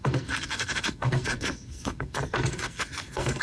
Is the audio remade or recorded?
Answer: remade